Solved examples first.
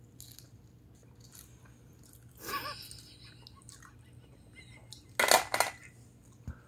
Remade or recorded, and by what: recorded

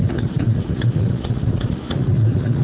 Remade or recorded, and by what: remade, vocoder, Vocos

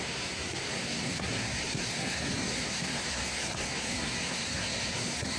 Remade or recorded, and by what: remade, codec, SNAC